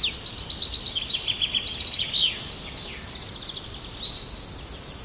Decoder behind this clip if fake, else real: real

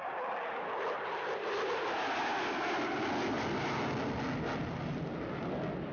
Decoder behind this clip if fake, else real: real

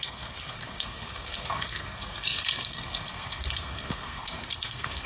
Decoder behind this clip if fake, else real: fake, codec, SNAC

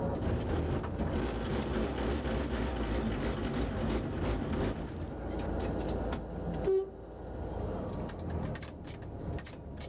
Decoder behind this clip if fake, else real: real